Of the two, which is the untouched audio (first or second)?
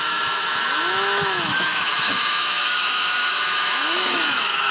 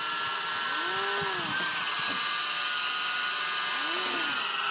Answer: second